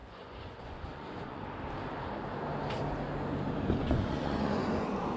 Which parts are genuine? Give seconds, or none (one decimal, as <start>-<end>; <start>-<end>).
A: 1.4-3.8; 4.7-5.2